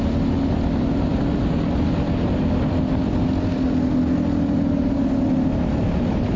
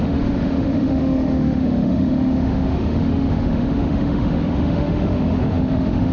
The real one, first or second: first